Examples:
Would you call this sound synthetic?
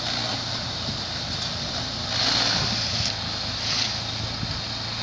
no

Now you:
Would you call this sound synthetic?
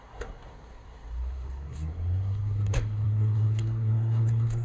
yes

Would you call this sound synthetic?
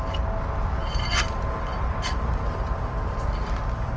no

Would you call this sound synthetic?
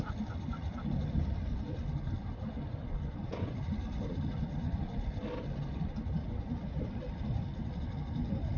no